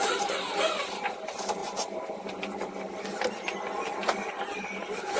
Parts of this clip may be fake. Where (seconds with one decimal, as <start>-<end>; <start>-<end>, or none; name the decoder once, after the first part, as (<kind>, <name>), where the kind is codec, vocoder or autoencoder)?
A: none